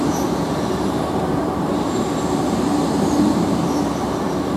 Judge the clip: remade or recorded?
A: remade